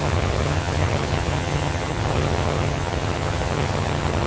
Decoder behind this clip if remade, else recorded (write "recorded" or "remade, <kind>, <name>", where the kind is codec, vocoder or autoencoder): remade, vocoder, HiFi-GAN